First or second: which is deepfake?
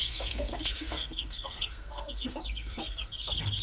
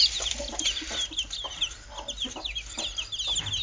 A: first